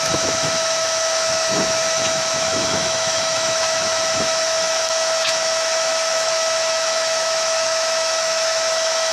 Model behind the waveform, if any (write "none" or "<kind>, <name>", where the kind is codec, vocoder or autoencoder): autoencoder, DAC-VAE